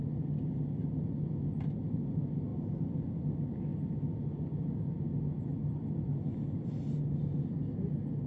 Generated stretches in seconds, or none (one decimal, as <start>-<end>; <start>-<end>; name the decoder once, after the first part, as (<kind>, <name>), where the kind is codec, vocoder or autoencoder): none